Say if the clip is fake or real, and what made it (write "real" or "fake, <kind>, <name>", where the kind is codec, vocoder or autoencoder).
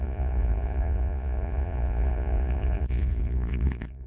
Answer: fake, vocoder, Vocos